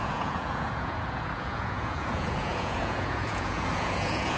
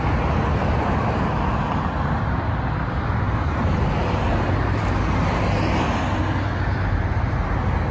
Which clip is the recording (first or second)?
second